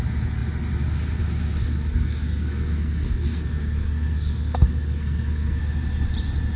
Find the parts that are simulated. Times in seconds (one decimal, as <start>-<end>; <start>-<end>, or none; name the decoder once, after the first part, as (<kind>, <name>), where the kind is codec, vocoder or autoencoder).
1.6-5.6 (codec, SNAC)